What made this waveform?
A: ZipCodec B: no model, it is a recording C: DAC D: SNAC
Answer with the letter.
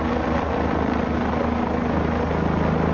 B